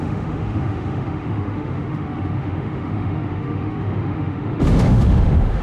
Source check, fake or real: fake